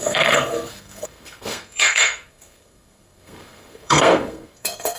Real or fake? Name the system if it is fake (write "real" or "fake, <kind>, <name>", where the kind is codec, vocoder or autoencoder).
fake, codec, SNAC